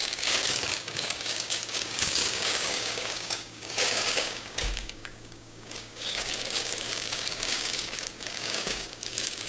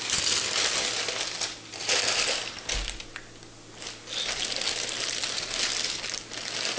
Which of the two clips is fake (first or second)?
first